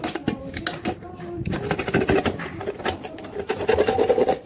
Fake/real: real